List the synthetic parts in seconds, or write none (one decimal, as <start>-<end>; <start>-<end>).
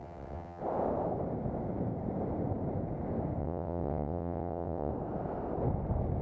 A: 0.0-0.6; 3.4-4.9